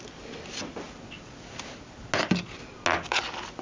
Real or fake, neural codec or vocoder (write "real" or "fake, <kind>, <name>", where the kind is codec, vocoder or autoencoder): real